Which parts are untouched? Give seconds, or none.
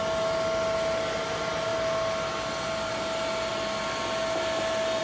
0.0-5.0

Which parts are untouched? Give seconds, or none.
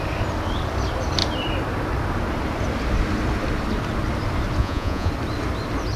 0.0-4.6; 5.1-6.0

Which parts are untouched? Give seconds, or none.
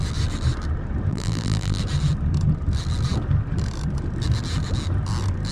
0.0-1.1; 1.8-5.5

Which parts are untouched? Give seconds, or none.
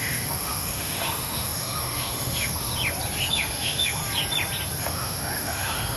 2.7-3.3; 4.0-4.8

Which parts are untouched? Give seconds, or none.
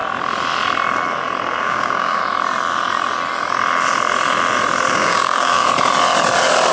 0.0-1.6; 2.2-4.9; 5.6-6.7